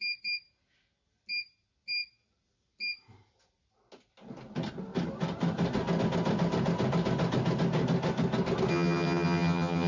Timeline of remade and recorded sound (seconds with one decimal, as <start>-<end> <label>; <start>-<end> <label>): 0.0-8.7 recorded; 8.7-9.9 remade